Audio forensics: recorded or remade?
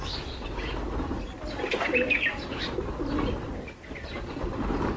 recorded